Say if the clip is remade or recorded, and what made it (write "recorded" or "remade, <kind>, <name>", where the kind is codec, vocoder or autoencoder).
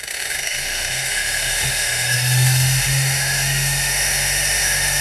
remade, autoencoder, DAC-VAE